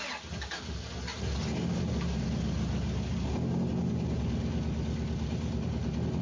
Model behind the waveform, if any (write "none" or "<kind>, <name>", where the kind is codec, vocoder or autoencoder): none